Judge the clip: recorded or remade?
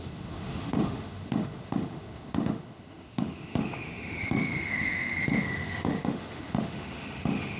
remade